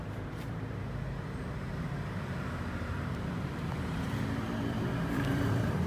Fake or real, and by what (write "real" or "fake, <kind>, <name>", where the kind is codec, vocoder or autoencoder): fake, vocoder, BigVGAN v2